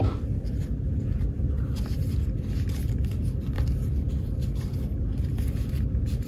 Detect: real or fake fake